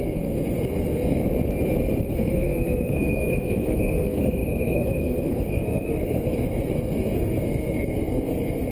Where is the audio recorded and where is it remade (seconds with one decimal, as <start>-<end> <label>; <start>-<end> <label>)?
0.0-1.2 remade; 1.2-2.0 recorded; 2.0-8.7 remade